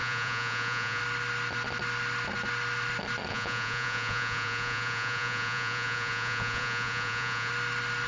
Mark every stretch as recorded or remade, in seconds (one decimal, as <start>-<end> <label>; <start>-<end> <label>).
0.0-1.0 remade; 1.0-3.3 recorded; 3.3-7.5 remade; 7.5-8.1 recorded